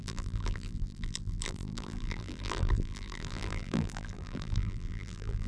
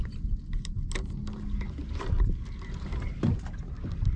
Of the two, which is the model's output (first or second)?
first